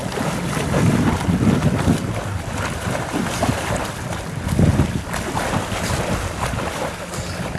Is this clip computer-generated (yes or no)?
no